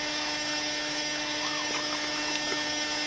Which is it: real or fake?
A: fake